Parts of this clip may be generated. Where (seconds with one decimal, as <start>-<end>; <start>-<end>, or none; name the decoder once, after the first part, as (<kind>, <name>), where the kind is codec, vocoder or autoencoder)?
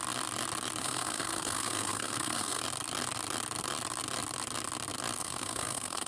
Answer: 0.8-2.6 (codec, SNAC); 5.2-6.1